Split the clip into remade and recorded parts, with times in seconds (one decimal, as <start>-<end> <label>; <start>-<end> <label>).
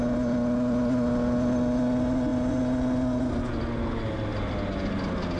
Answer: 0.0-4.3 recorded; 4.3-4.8 remade; 4.8-5.4 recorded